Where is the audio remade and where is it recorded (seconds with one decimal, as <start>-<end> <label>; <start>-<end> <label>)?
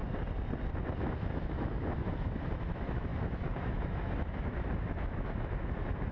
0.0-1.0 recorded; 1.0-6.1 remade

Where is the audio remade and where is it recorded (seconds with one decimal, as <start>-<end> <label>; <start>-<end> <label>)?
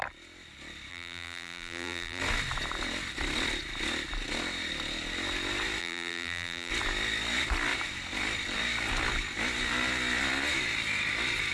0.0-0.9 recorded; 0.9-2.2 remade; 2.2-5.8 recorded; 5.8-6.7 remade; 6.7-11.5 recorded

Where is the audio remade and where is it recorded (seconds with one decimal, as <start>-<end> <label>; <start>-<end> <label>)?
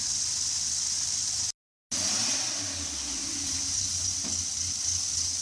0.0-5.4 recorded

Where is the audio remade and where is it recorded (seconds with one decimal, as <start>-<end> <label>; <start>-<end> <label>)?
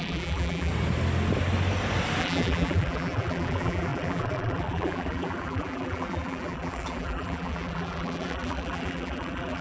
0.0-0.7 remade; 0.7-2.2 recorded; 2.2-9.6 remade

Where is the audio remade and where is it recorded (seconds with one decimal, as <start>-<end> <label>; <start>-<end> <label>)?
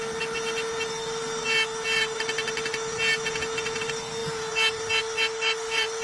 0.0-6.0 recorded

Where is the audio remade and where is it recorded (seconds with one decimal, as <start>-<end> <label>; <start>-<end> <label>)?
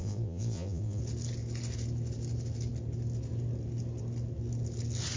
0.0-1.0 remade; 1.0-5.2 recorded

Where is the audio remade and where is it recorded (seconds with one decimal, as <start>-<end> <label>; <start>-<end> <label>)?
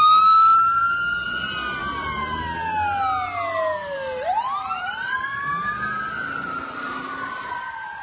0.0-1.8 recorded; 1.8-2.4 remade; 2.4-3.8 recorded; 3.8-5.5 remade; 5.5-8.0 recorded